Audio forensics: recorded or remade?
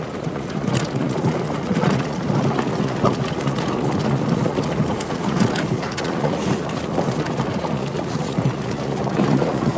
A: remade